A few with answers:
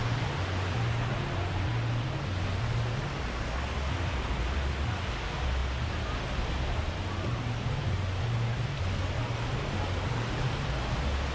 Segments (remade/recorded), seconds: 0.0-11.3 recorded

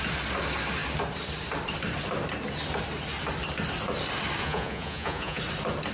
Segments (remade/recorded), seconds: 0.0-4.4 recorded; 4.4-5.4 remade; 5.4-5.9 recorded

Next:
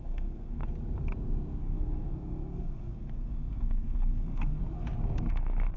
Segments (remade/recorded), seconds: 0.0-0.6 remade; 0.6-1.6 recorded; 1.6-4.6 remade; 4.6-5.3 recorded; 5.3-5.8 remade